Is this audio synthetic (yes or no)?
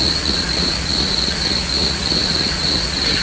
yes